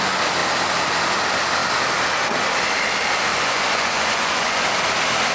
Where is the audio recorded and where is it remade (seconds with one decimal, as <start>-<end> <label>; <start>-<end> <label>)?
0.0-3.3 recorded; 3.3-4.6 remade; 4.6-5.3 recorded